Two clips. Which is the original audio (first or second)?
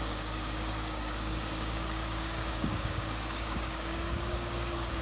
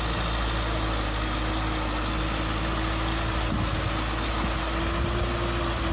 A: second